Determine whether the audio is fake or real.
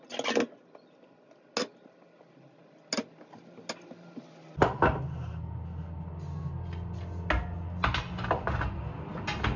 real